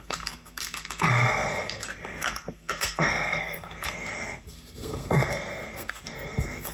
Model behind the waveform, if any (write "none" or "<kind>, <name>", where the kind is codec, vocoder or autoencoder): codec, SNAC